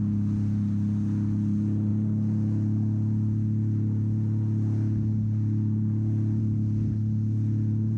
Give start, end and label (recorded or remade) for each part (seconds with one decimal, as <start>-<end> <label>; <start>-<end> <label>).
0.0-8.0 recorded